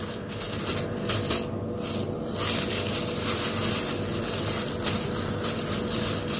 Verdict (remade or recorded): recorded